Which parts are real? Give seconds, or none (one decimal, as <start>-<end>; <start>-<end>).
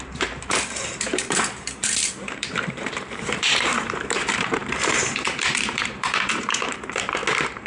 7.2-7.7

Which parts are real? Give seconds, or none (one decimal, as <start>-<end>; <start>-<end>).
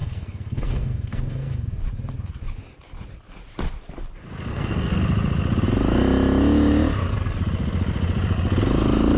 1.8-4.5; 5.0-9.2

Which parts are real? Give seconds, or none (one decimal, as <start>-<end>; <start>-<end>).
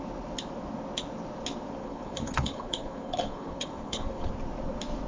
0.0-1.8; 4.3-5.1